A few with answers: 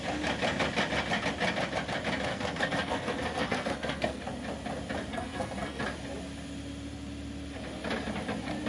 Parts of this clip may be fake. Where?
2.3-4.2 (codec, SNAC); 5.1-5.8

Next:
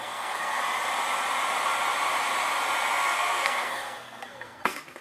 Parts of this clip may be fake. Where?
0.0-0.6 (codec, SNAC); 3.0-5.0

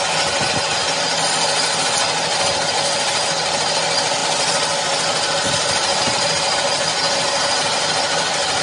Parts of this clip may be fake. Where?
none